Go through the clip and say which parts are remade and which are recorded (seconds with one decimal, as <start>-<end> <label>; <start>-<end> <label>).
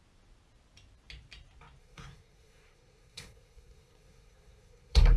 0.0-1.8 recorded; 1.8-5.2 remade